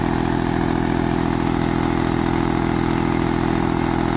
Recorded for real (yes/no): yes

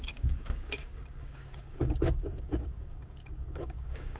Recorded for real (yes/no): no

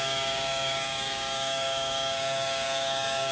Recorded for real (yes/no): no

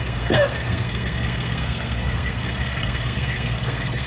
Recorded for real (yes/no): no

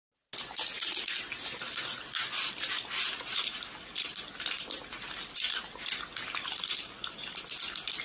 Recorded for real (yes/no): yes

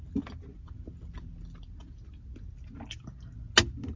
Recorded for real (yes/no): yes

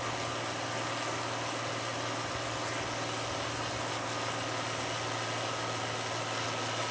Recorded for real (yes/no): yes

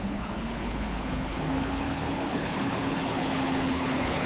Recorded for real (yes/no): no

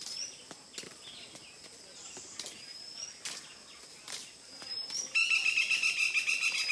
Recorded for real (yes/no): yes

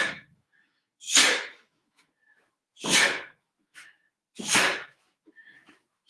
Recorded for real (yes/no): no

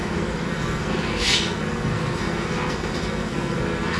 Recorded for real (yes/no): no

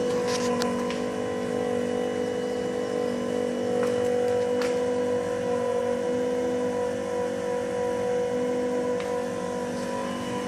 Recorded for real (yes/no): yes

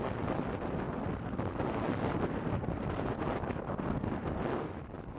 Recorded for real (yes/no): yes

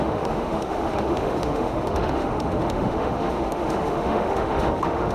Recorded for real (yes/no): no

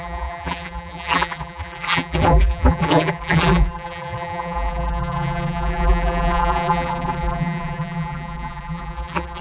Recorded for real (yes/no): no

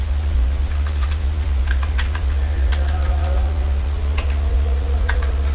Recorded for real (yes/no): no